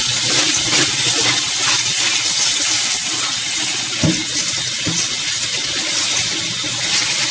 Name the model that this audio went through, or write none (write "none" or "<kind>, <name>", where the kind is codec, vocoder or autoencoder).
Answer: none